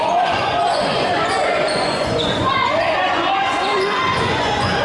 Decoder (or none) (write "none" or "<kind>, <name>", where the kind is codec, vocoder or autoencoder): vocoder, Vocos